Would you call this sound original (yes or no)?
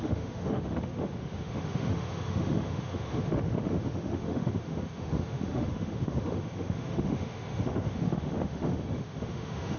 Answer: no